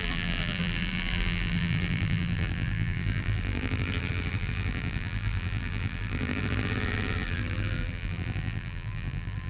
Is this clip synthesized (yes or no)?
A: yes